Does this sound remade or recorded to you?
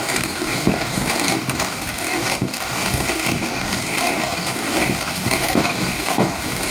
remade